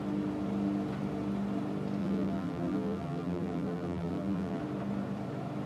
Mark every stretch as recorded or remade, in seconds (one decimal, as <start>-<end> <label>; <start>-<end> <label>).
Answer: 0.0-2.0 recorded; 2.0-4.6 remade; 4.6-5.7 recorded